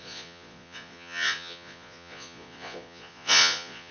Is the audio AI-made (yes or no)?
yes